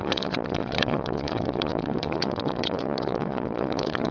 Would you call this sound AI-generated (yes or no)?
yes